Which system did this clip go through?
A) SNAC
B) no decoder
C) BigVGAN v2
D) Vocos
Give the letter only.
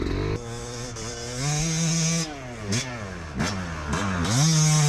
B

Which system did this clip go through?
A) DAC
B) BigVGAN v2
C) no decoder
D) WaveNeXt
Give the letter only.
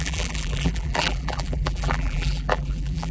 B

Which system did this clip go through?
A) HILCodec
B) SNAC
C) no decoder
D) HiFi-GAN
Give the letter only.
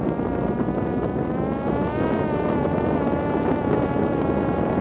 C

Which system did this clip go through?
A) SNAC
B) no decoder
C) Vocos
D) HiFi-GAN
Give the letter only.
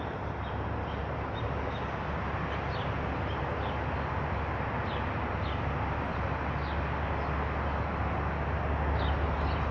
B